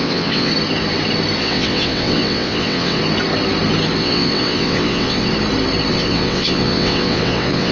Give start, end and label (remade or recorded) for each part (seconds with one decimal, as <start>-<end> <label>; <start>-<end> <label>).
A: 0.0-0.5 remade; 0.5-1.4 recorded; 1.4-3.0 remade; 3.0-4.0 recorded; 4.0-5.3 remade; 5.3-5.9 recorded; 5.9-7.7 remade